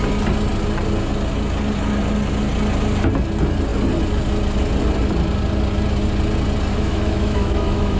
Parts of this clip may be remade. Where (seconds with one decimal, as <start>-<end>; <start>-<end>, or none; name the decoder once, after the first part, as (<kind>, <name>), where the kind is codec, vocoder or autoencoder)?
6.7-8.0 (autoencoder, DAC-VAE)